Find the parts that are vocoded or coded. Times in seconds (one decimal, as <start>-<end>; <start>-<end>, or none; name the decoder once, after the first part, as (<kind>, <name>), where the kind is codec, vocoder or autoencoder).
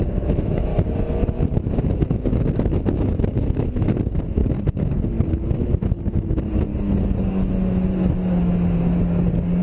0.0-0.7 (autoencoder, DAC-VAE); 1.6-6.7